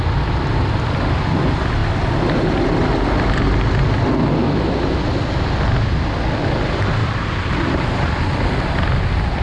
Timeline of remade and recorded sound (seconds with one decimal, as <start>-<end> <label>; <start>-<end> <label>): 0.0-7.0 recorded; 7.0-8.2 remade; 8.2-9.4 recorded